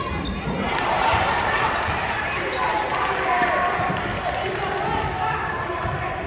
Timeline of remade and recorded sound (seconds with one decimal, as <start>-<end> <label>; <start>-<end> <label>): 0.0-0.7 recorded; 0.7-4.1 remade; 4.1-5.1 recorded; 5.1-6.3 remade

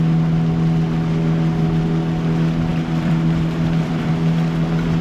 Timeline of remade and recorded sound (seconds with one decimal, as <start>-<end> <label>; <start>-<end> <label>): 0.0-2.7 recorded; 2.7-4.1 remade; 4.1-5.0 recorded

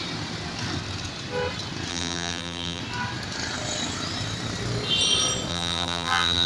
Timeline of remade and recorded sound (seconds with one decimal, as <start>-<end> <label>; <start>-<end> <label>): 0.0-1.9 recorded; 1.9-2.8 remade; 2.8-5.5 recorded; 5.5-6.5 remade

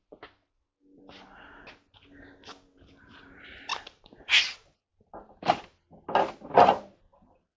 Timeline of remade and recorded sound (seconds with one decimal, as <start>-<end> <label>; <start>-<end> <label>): 0.0-3.7 recorded; 3.7-4.4 remade; 4.4-4.9 recorded; 4.9-5.6 remade; 5.6-7.6 recorded

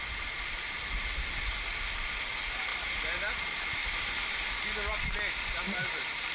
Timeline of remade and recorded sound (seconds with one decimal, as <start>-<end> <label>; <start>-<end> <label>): 0.0-2.7 remade; 2.7-3.4 recorded; 3.4-3.8 remade; 3.8-5.5 recorded; 5.5-6.3 remade